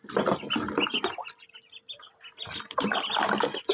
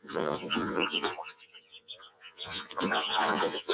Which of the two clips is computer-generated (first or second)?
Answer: second